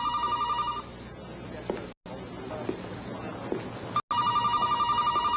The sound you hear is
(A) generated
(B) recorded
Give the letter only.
B